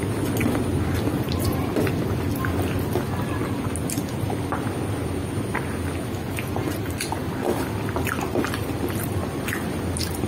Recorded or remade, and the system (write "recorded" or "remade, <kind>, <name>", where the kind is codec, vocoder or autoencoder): recorded